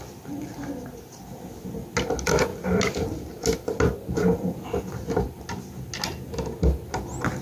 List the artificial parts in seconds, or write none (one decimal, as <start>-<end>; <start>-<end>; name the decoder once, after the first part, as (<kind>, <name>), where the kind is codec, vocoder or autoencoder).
none